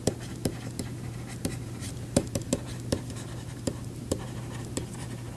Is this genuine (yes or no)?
no